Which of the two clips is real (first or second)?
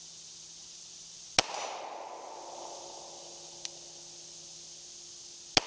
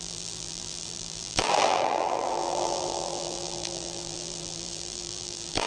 first